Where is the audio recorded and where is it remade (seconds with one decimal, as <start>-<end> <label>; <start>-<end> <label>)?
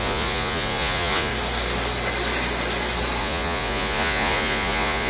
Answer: 0.0-1.3 remade; 1.3-3.2 recorded; 3.2-5.1 remade